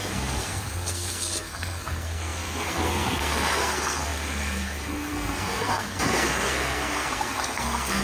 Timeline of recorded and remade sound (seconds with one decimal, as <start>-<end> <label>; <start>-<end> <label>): 0.0-8.0 remade